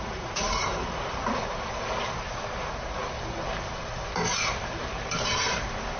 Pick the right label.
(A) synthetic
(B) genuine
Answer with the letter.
A